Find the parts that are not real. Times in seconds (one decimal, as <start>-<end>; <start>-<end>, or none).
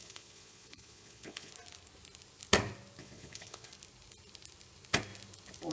0.0-1.5; 3.0-3.7